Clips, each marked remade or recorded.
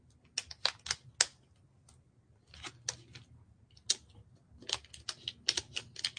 recorded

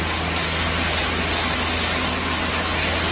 recorded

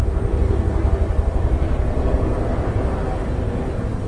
recorded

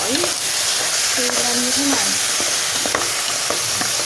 recorded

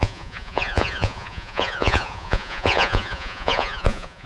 remade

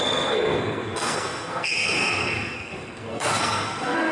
remade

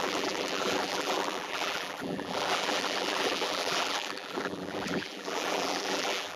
remade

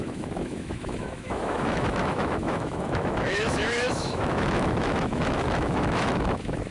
remade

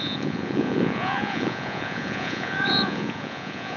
remade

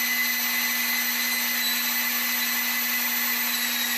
recorded